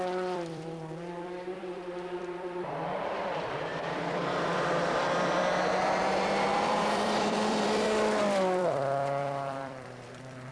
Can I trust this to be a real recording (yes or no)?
no